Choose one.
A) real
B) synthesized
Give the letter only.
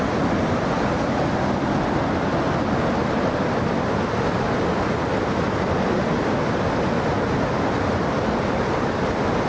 A